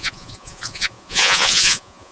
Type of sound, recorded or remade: remade